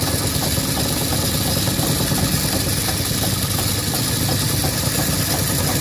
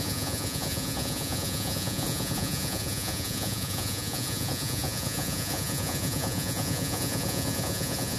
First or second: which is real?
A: first